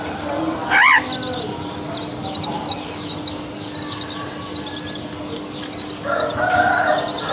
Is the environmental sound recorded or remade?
recorded